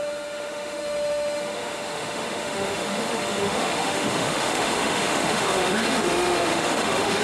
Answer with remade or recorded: remade